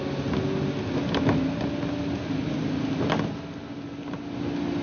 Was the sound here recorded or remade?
recorded